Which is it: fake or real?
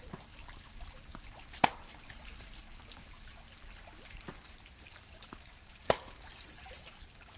fake